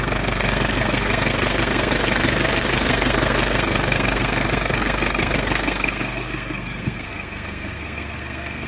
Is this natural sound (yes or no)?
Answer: no